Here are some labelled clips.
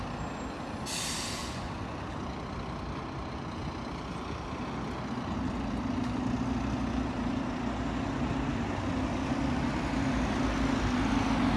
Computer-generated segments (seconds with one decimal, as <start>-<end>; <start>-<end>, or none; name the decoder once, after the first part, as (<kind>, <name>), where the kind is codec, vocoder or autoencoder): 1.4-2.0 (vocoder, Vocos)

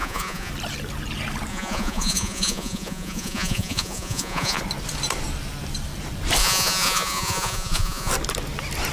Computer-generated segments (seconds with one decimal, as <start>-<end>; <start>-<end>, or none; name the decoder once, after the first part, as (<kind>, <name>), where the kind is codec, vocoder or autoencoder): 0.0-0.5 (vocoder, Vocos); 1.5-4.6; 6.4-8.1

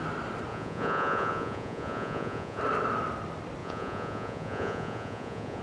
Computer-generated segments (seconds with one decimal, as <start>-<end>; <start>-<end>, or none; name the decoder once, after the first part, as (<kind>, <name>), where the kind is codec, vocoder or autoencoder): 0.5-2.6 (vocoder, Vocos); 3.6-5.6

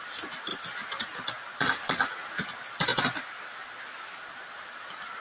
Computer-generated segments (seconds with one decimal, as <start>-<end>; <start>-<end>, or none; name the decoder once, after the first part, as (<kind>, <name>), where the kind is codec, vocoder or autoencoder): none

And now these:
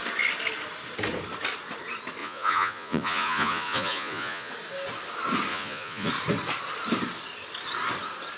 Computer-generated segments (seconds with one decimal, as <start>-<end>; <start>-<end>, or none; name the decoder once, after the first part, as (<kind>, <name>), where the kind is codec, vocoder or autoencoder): 2.2-4.5 (vocoder, Vocos); 5.5-6.1

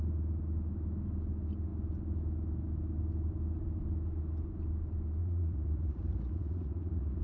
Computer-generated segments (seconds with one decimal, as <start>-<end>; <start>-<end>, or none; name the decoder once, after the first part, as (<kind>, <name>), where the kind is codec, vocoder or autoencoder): 5.2-7.2 (vocoder, Vocos)